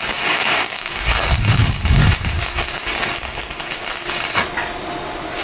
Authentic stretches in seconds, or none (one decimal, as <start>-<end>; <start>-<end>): 2.0-5.4